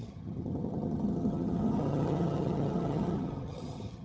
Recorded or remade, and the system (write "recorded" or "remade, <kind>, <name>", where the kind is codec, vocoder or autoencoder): remade, vocoder, HiFi-GAN